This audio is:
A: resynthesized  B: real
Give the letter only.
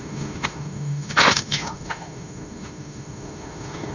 A